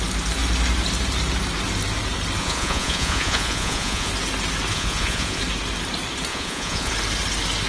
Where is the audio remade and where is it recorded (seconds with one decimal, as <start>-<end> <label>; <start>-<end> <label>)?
0.0-2.4 recorded; 2.4-4.1 remade; 4.1-4.7 recorded; 4.7-5.4 remade; 5.4-6.3 recorded; 6.3-6.9 remade; 6.9-7.7 recorded